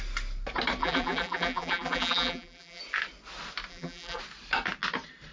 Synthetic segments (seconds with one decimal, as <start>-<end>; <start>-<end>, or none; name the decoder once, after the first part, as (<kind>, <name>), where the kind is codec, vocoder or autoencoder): 0.8-2.8 (vocoder, BigVGAN v2); 3.7-4.2